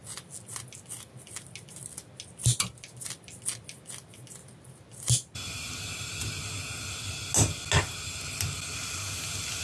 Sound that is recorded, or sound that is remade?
recorded